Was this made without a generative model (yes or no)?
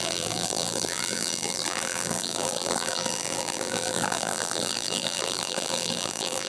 no